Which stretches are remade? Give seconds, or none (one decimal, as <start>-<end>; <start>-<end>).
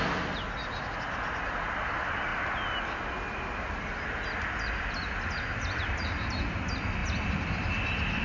none